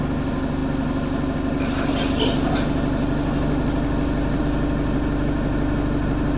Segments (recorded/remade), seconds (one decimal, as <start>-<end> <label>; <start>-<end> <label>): 0.0-6.4 recorded